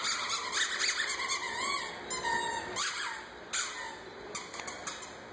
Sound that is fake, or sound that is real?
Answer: real